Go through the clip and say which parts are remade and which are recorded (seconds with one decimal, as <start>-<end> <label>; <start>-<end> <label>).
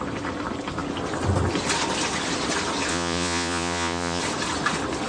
0.0-2.9 recorded; 2.9-4.2 remade; 4.2-5.1 recorded